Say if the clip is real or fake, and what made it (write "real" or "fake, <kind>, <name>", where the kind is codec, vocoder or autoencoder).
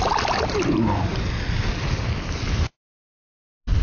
real